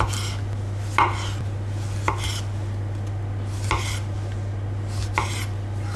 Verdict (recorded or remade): recorded